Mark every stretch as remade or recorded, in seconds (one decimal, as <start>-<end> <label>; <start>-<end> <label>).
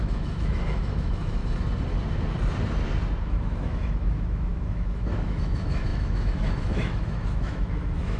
0.0-1.4 remade; 1.4-3.2 recorded; 3.2-8.2 remade